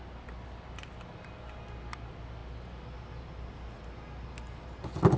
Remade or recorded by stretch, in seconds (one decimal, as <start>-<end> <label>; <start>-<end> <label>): 0.0-5.2 recorded